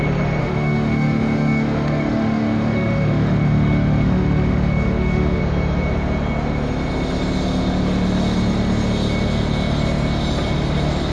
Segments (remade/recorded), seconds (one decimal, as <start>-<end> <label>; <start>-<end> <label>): 0.0-0.4 recorded; 0.4-5.4 remade; 5.4-11.1 recorded